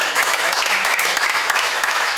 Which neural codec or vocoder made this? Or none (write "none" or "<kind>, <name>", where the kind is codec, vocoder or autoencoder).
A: autoencoder, DAC-VAE